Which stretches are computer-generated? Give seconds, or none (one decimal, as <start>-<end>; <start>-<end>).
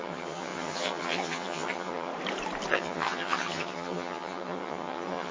0.0-2.1; 2.7-5.3